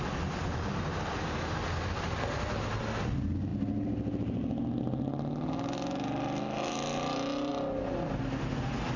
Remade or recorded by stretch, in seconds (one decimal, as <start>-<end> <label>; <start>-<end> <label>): 0.0-9.0 recorded